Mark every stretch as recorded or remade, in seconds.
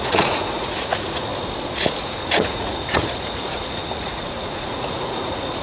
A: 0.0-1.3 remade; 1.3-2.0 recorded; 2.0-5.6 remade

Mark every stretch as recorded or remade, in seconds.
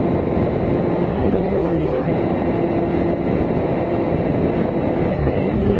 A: 0.0-1.1 recorded; 1.1-2.1 remade; 2.1-5.1 recorded; 5.1-5.8 remade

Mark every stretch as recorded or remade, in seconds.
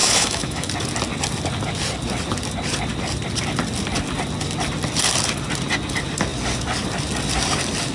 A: 0.0-0.7 remade; 0.7-7.9 recorded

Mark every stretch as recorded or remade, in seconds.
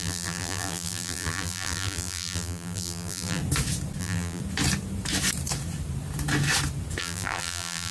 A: 0.0-3.4 remade; 3.4-4.0 recorded; 4.0-4.4 remade; 4.4-7.0 recorded; 7.0-7.9 remade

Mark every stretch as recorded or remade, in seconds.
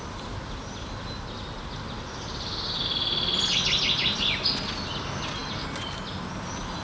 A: 0.0-6.8 recorded